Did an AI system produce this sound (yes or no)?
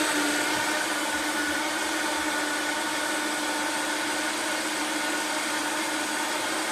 no